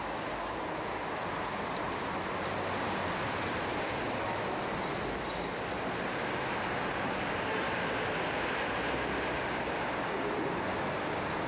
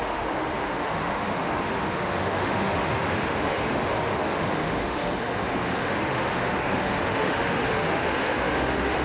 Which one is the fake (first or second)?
second